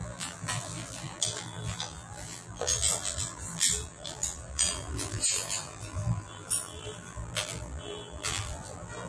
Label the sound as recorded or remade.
remade